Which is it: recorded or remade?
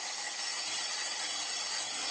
recorded